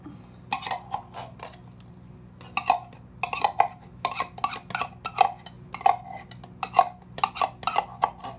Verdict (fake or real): real